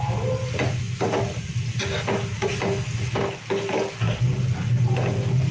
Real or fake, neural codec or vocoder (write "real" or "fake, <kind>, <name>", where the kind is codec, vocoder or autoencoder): real